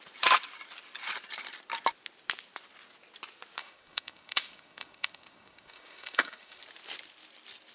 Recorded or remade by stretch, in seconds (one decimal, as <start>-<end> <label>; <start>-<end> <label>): 0.0-3.6 recorded; 3.6-6.6 remade; 6.6-7.7 recorded